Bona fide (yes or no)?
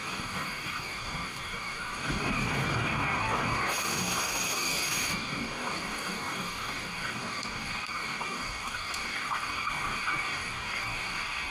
no